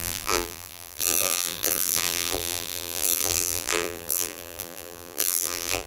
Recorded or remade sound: remade